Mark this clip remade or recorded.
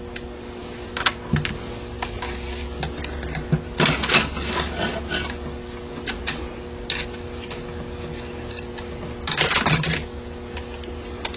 recorded